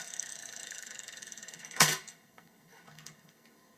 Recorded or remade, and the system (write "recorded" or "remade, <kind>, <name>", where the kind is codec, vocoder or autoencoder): remade, codec, SNAC